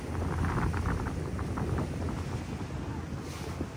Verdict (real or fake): real